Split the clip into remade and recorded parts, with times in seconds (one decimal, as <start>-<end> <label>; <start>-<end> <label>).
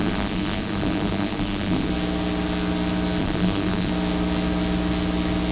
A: 0.0-1.9 remade; 1.9-3.2 recorded; 3.2-3.9 remade; 3.9-5.5 recorded